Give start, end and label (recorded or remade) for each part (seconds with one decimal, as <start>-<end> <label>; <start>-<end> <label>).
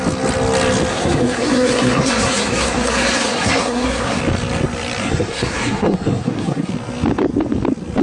0.0-0.9 recorded; 0.9-4.2 remade; 4.2-5.0 recorded; 5.0-6.7 remade; 6.7-8.0 recorded